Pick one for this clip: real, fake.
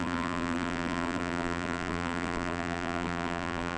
fake